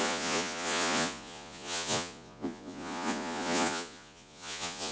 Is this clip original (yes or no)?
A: no